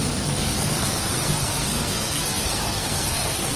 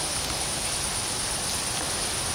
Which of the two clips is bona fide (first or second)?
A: second